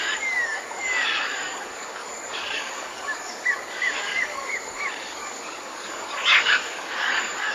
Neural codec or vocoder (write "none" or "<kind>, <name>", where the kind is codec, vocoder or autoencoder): codec, DAC